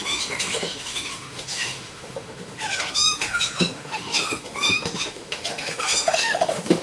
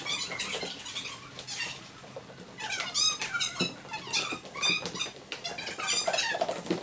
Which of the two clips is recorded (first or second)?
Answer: second